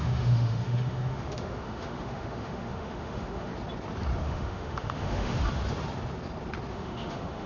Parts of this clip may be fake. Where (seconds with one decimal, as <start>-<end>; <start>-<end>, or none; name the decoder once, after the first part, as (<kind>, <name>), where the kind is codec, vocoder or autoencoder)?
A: 0.0-3.5 (autoencoder, DAC-VAE); 4.2-5.6; 6.7-7.5